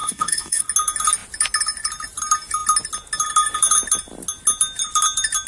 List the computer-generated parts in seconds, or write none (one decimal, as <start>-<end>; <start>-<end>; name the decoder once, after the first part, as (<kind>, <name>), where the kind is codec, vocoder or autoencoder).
0.0-0.6 (codec, DAC)